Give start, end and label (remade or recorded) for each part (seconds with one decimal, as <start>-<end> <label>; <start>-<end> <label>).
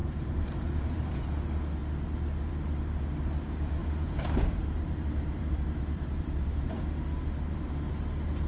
0.0-1.2 remade; 1.2-3.8 recorded; 3.8-6.8 remade; 6.8-8.5 recorded